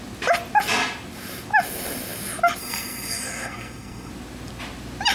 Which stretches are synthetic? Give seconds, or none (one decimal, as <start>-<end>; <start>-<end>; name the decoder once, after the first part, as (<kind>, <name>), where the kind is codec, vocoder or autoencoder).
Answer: 2.6-4.1 (codec, SNAC)

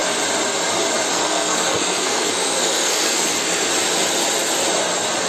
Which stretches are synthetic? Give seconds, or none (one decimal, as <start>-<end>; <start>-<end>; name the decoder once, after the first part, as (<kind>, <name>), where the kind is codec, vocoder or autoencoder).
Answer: 1.1-3.7 (codec, SNAC)